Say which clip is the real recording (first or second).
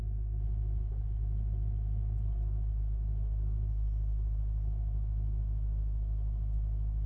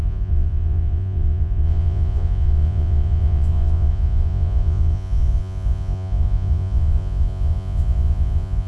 first